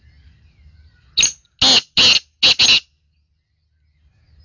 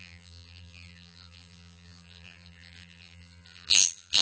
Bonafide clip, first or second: first